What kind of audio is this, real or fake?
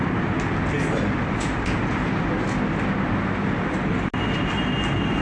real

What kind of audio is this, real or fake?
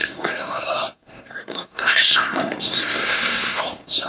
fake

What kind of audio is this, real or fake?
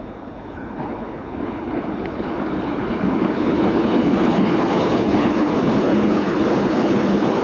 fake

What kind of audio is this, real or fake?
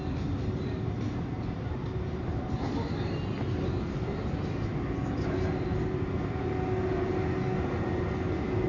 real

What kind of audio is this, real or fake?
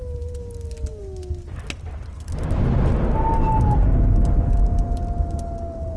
real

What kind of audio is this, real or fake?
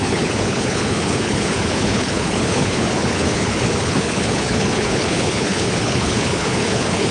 fake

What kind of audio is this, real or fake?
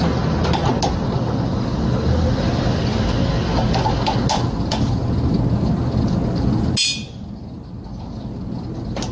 real